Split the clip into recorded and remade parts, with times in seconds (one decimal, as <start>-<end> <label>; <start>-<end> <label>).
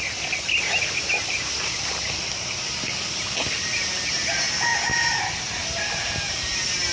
0.0-6.9 recorded